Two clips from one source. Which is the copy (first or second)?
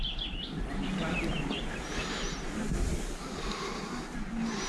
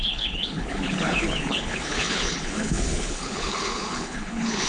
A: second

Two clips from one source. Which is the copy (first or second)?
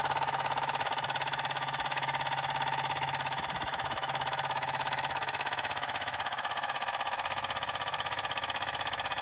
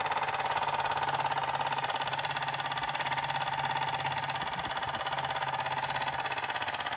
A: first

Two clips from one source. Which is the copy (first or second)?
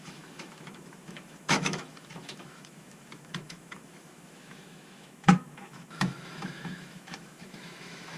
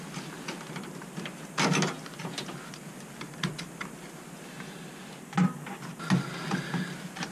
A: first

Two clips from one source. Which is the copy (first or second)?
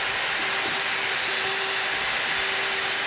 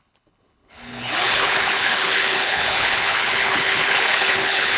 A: second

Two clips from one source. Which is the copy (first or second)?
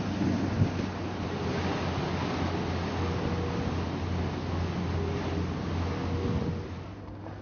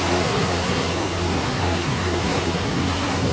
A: second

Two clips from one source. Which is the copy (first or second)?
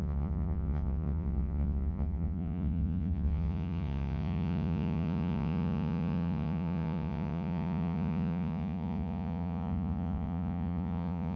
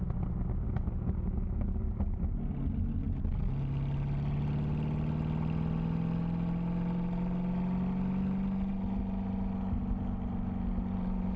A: first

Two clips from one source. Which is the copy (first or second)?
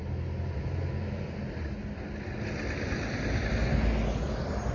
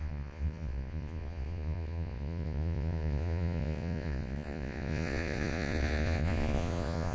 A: second